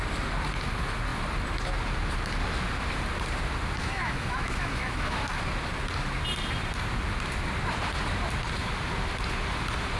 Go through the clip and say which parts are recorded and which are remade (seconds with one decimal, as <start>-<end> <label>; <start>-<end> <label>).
0.0-3.8 recorded; 3.8-5.4 remade; 5.4-10.0 recorded